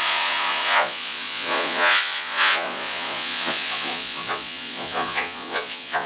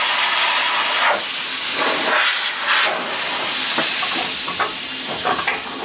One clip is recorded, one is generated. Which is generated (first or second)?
first